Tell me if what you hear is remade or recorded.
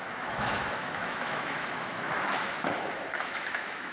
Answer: remade